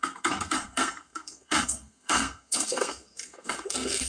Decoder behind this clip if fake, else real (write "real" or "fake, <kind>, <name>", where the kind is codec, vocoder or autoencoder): fake, codec, SNAC